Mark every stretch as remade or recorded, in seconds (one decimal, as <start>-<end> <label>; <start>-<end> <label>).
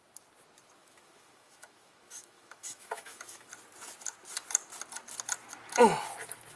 0.0-0.8 recorded; 0.8-3.5 remade; 3.5-6.6 recorded